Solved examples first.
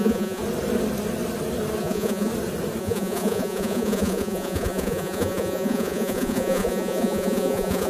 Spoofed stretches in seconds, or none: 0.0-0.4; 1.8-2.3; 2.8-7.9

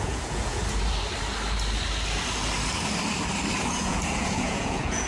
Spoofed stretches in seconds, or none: 0.0-0.6; 3.7-5.1